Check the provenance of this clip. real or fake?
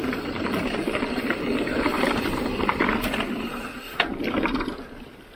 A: fake